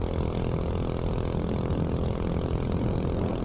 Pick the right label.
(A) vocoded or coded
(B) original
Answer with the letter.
B